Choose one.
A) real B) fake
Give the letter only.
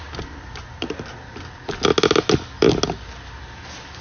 A